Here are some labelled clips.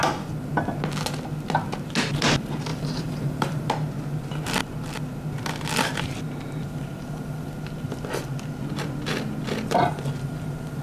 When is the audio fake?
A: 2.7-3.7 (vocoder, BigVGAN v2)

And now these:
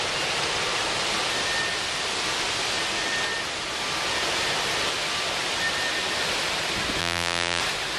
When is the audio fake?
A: 7.0-7.6 (vocoder, BigVGAN v2)